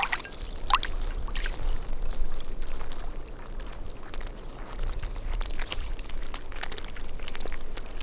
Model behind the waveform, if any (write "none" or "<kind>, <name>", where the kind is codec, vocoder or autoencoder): none